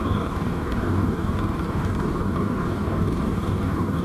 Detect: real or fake fake